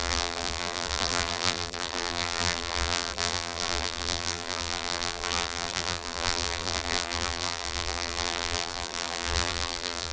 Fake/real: fake